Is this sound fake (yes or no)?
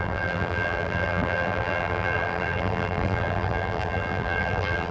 yes